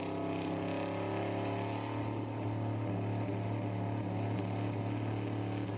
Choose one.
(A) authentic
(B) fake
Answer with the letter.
A